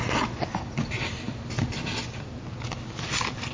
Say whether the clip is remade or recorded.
recorded